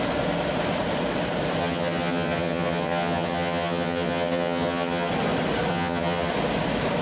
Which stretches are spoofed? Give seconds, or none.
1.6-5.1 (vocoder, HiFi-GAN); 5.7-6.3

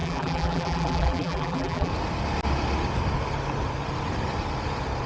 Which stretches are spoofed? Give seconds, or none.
0.0-1.9 (vocoder, BigVGAN v2)

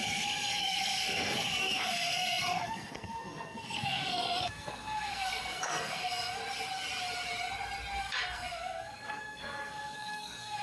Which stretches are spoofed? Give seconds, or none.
0.0-6.4 (codec, SNAC); 8.0-10.6

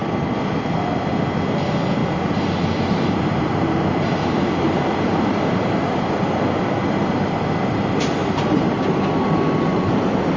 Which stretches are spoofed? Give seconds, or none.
2.0-5.6 (vocoder, BigVGAN v2); 8.2-9.0

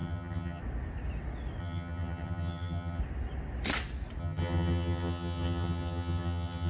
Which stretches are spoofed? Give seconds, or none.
0.0-0.6 (vocoder, HiFi-GAN); 1.6-3.0; 4.2-6.7